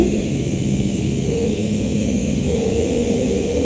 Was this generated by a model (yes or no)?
yes